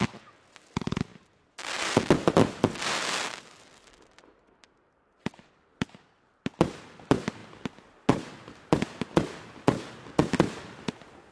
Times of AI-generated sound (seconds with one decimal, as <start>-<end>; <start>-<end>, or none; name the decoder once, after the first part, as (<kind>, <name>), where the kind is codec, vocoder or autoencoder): none